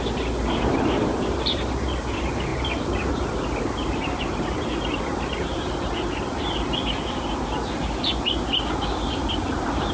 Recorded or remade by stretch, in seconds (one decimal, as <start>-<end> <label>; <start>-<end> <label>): 0.0-9.9 recorded